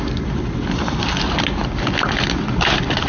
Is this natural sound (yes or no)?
yes